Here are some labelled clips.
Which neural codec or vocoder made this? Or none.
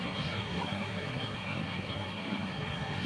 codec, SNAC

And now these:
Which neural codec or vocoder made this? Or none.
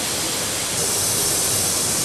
none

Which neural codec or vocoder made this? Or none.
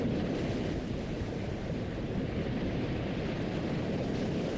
none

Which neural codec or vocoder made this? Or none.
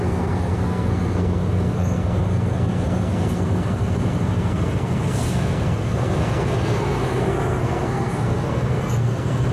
codec, SNAC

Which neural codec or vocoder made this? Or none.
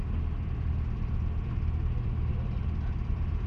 none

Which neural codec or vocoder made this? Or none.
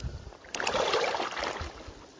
none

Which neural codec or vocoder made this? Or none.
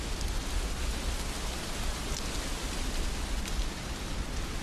none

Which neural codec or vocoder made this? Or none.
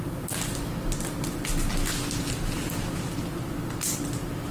none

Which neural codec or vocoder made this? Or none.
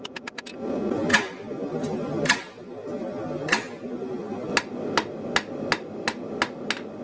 none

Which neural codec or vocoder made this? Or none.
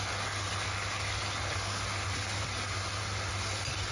none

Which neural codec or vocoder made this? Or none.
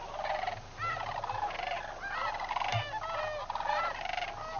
none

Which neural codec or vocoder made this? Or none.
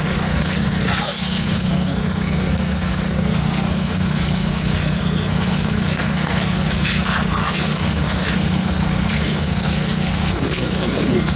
codec, SNAC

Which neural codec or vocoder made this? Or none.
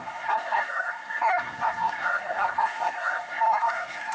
codec, SNAC